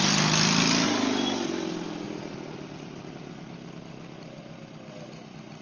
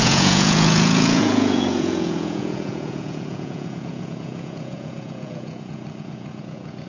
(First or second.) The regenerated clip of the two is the second